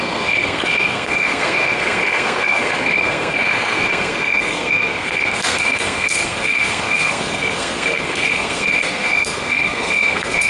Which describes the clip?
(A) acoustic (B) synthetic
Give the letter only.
B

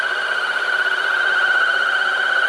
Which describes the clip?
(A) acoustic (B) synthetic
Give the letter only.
A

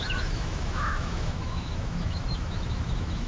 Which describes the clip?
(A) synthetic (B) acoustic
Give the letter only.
A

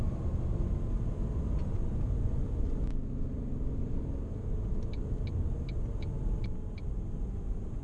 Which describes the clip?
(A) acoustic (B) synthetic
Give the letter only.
A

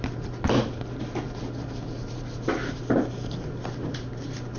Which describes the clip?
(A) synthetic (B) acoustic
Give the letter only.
B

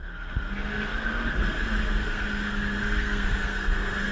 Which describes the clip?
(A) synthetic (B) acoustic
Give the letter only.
A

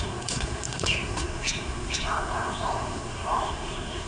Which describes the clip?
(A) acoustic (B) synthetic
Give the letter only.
B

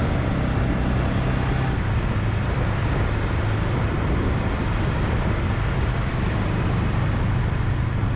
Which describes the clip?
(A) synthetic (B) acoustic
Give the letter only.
B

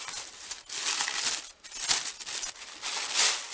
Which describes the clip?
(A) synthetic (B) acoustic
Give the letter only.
B